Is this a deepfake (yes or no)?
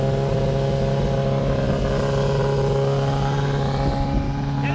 no